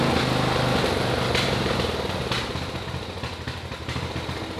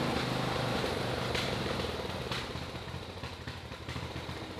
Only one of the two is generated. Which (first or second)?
second